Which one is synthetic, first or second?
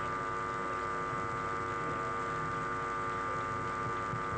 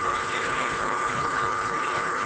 second